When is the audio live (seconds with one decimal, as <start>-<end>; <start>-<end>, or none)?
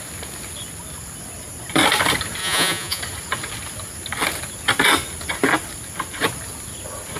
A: 0.0-2.4; 3.0-7.2